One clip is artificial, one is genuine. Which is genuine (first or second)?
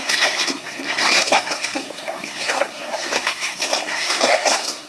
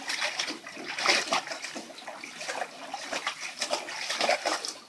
second